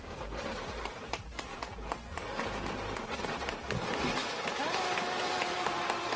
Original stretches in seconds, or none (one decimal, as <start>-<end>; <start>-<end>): 1.3-4.6